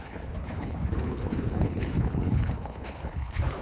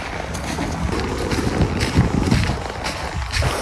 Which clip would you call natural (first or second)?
second